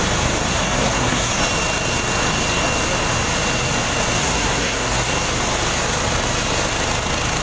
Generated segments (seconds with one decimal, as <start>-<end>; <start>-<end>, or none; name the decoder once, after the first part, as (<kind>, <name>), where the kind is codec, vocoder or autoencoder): 0.5-1.4 (codec, SNAC); 4.2-5.1